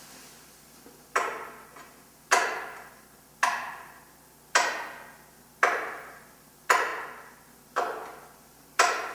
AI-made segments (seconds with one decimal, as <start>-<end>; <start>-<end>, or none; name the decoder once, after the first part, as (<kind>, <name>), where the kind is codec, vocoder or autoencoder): none

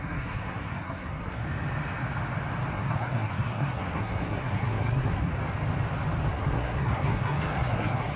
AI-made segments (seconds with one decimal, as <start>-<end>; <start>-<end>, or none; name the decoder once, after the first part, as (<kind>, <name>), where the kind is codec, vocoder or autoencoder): 0.0-1.4 (codec, SNAC); 2.7-5.3; 6.3-8.2

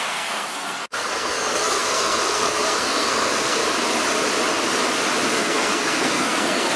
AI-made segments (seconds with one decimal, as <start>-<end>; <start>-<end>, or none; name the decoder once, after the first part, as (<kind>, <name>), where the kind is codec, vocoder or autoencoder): 0.0-3.6 (codec, SNAC); 5.3-6.8

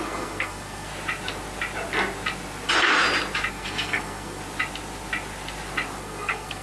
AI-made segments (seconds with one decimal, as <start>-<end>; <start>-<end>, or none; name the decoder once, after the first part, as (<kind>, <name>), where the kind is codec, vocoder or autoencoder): 0.0-0.9 (codec, SNAC); 3.5-4.4; 6.0-6.6

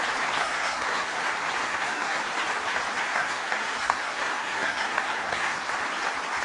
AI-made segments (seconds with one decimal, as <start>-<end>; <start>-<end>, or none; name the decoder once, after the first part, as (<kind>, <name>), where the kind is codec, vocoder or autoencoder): 0.4-1.2 (codec, SNAC); 1.6-2.2; 3.0-5.7

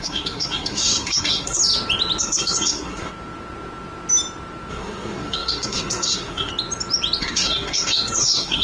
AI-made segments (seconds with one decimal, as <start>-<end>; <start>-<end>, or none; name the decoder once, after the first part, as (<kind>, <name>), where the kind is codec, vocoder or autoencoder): 0.0-1.6 (codec, SNAC); 2.2-3.1; 4.7-6.5; 7.2-8.6